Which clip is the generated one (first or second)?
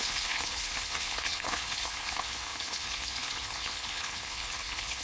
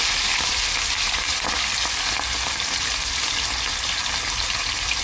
first